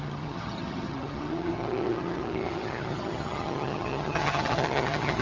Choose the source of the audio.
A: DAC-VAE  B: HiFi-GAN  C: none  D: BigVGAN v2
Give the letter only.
B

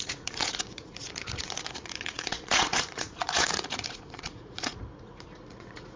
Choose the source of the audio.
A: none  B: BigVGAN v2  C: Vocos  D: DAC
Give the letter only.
C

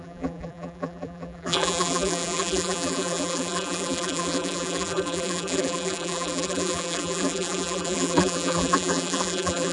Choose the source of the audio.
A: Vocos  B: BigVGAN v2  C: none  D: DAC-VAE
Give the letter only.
B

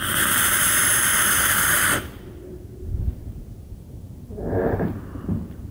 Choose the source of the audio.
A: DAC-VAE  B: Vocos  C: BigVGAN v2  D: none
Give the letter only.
C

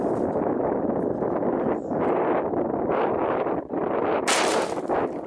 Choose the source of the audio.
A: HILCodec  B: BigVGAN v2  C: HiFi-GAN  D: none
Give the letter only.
D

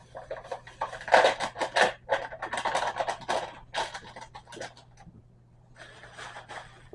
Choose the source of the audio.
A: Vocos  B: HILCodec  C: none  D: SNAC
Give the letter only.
C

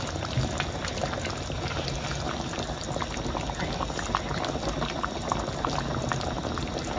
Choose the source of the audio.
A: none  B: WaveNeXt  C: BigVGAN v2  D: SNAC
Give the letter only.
A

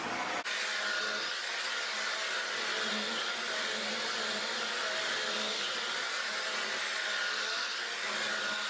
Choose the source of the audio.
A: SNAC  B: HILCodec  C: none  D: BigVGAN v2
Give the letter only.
C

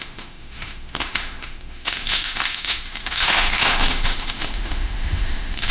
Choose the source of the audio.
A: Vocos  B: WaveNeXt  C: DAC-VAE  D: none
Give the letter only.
C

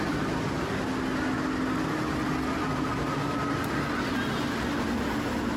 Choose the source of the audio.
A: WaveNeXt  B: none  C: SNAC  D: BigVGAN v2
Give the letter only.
B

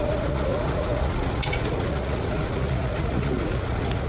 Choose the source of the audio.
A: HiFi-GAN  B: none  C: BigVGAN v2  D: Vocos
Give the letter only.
D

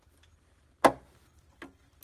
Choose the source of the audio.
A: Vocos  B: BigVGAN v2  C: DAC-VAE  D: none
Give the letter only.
D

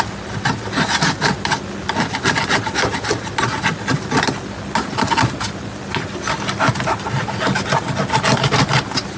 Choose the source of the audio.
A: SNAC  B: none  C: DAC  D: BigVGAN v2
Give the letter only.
B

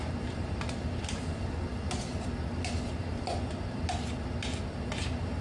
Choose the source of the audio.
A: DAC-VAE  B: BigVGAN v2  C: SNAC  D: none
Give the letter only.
D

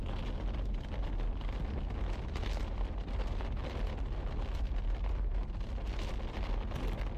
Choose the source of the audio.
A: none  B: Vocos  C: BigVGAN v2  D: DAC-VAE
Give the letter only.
A